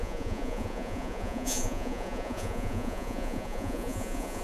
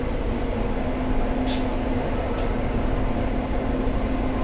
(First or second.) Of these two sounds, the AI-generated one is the first